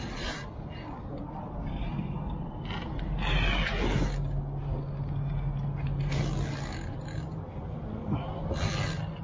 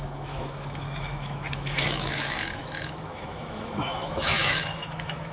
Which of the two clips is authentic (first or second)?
first